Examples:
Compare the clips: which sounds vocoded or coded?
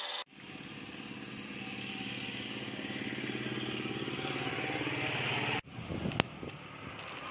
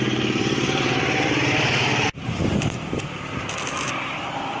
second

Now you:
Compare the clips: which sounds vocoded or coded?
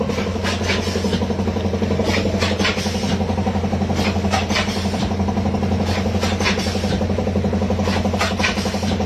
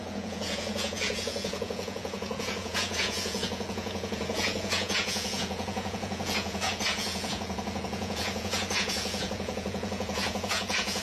second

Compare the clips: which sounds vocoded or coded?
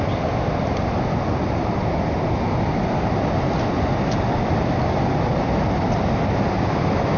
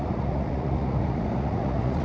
second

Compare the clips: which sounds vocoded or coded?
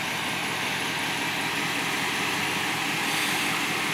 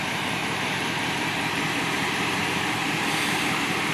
second